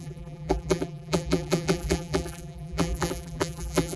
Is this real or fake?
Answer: fake